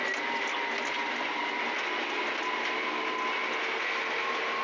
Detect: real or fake real